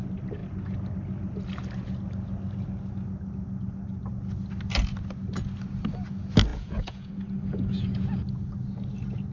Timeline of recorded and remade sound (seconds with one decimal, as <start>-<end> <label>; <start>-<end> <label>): 0.0-6.5 recorded; 6.5-7.1 remade; 7.1-7.5 recorded; 7.5-8.2 remade; 8.2-9.3 recorded